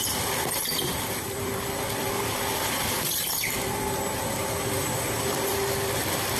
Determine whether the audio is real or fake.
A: fake